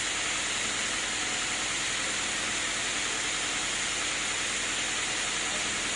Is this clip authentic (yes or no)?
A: yes